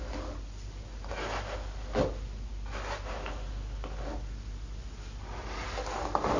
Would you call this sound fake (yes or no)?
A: no